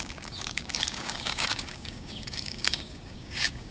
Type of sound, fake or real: fake